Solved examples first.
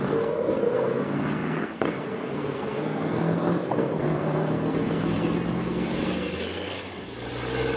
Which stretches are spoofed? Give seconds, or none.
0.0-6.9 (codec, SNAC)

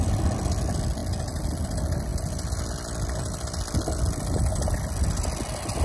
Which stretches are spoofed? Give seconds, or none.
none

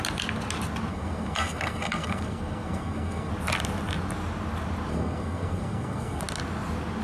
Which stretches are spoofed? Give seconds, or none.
0.9-3.3 (codec, SNAC); 4.9-6.2